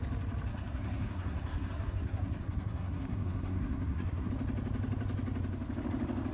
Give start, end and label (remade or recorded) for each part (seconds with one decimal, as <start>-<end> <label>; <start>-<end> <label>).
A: 0.0-0.5 recorded; 0.5-4.3 remade; 4.3-6.3 recorded